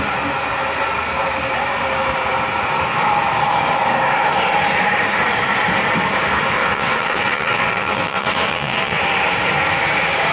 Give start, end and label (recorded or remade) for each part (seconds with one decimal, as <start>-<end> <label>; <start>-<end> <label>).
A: 0.0-6.6 recorded; 6.6-9.0 remade; 9.0-10.3 recorded